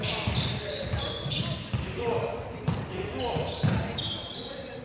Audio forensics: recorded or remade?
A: remade